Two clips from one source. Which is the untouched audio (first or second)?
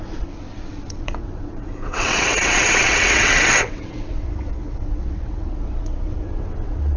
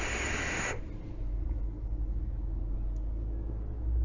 second